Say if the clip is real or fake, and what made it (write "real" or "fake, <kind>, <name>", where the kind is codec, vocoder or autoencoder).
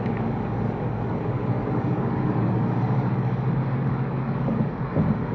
fake, codec, DAC